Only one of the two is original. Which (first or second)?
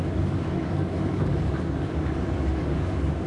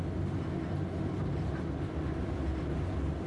second